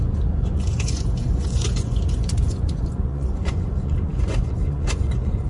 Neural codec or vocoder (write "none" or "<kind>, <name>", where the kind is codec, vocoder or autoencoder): vocoder, Vocos